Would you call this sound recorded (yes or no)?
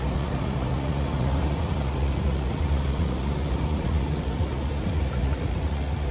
no